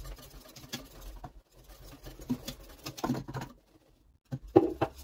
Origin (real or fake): real